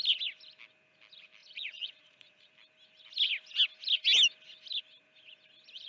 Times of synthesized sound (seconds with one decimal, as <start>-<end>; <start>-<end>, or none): 1.4-2.5